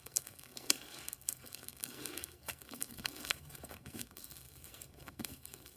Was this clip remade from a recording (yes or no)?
yes